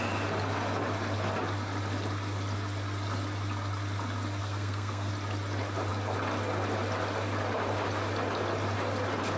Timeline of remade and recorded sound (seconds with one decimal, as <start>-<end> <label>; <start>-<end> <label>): 0.0-4.4 recorded; 4.4-5.1 remade; 5.1-9.4 recorded